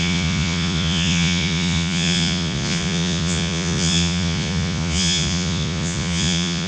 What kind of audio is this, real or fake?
fake